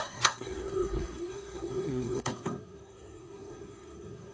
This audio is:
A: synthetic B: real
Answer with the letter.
A